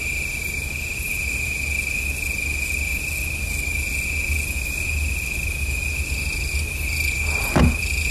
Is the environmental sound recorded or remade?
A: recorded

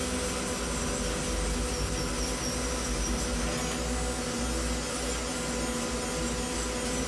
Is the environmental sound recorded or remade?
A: recorded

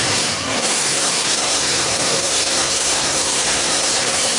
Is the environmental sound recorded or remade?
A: remade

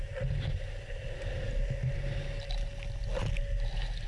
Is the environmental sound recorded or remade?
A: recorded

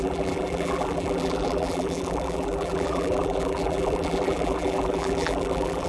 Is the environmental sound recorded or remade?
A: remade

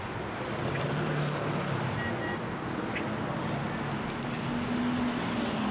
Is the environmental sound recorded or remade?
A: recorded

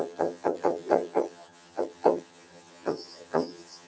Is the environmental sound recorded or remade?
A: remade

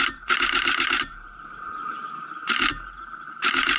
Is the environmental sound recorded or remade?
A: remade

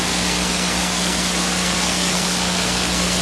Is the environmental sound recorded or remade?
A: remade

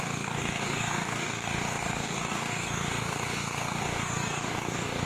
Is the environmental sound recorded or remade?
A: remade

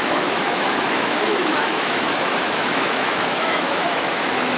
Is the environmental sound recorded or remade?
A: remade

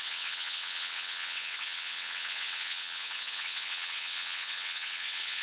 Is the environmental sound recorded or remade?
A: remade